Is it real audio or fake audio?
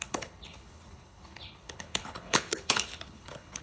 fake